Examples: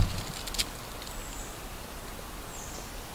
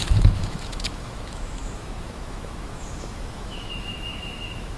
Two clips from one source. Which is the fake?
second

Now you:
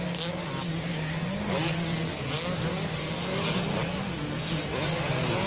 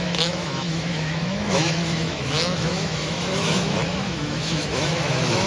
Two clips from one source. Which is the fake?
second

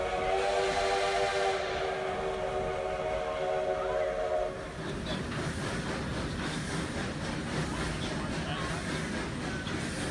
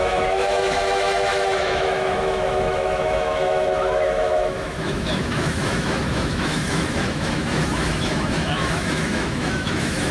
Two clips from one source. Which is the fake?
second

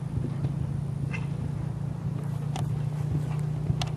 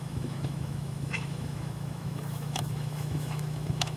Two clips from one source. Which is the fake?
second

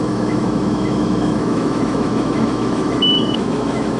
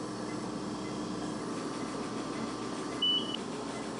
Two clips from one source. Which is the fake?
first